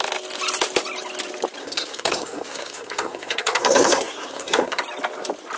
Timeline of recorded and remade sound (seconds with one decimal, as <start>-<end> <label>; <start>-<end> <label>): 0.0-1.6 recorded; 1.6-4.8 remade; 4.8-5.6 recorded